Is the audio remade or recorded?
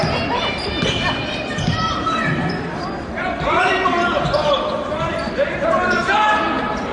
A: remade